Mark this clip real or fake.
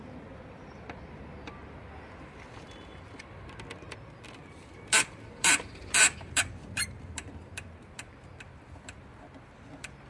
fake